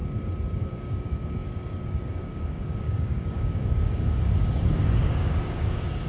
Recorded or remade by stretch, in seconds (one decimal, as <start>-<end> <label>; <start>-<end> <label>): 0.0-0.5 recorded; 0.5-6.1 remade